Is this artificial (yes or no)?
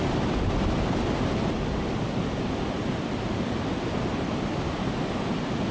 no